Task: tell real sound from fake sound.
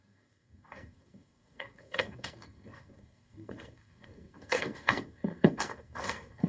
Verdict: fake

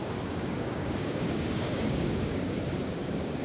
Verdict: fake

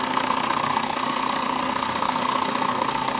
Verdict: fake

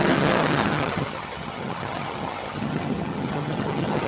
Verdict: fake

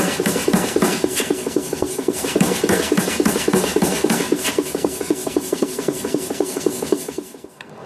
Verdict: fake